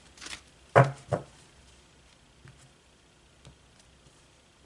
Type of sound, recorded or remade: recorded